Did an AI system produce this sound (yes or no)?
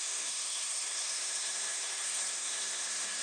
yes